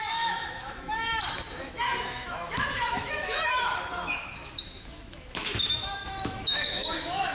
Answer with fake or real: fake